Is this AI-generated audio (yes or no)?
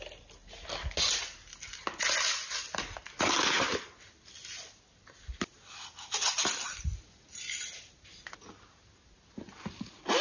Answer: no